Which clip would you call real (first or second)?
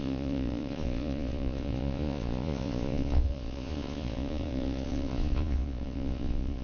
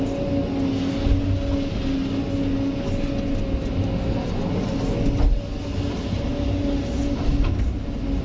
second